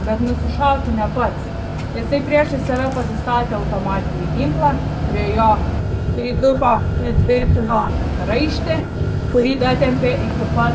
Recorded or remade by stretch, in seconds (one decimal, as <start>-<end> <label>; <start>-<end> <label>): 0.0-5.8 recorded; 5.8-7.9 remade; 7.9-8.8 recorded; 8.8-9.6 remade; 9.6-10.7 recorded